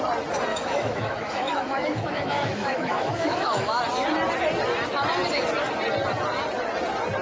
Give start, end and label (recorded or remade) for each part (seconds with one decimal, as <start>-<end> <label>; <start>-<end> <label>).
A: 0.0-0.5 recorded; 0.5-3.8 remade; 3.8-7.2 recorded